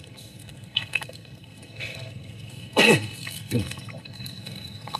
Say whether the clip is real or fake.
fake